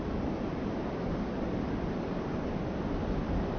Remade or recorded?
recorded